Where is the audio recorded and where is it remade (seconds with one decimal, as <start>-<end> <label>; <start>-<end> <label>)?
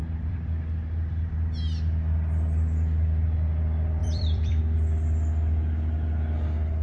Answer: 0.0-0.6 remade; 0.6-4.0 recorded; 4.0-4.6 remade; 4.6-6.8 recorded